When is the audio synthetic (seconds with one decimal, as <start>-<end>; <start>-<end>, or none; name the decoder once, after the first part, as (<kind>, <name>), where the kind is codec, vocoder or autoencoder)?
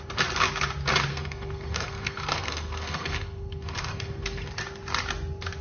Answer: 1.1-4.5 (codec, SNAC)